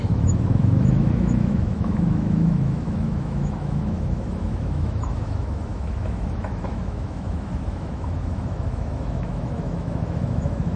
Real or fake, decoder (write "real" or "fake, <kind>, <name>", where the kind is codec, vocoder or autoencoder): fake, autoencoder, DAC-VAE